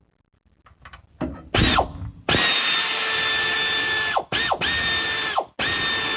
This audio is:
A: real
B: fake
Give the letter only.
A